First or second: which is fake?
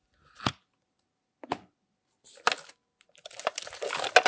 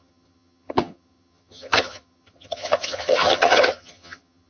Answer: second